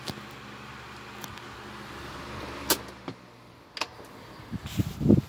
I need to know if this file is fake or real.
real